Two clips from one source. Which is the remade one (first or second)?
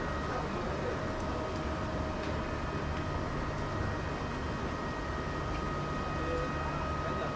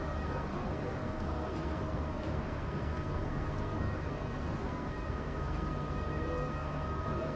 second